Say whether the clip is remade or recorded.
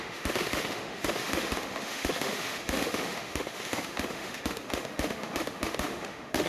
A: remade